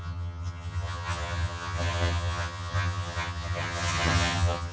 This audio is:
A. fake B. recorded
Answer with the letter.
A